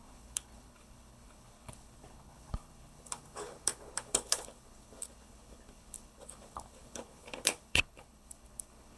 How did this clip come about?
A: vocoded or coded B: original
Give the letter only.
A